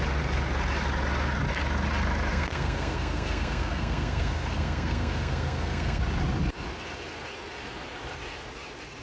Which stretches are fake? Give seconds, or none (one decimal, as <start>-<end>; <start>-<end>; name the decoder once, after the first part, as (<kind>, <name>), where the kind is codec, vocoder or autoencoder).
2.3-6.0 (codec, SNAC)